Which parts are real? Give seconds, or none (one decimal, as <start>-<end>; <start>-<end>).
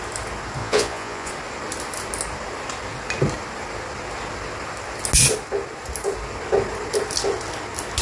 0.0-0.6; 1.3-8.0